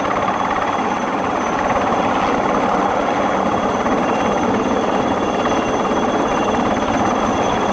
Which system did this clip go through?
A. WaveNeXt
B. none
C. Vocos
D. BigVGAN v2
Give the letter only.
D